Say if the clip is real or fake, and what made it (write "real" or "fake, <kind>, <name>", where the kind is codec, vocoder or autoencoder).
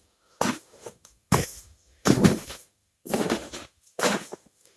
fake, autoencoder, DAC-VAE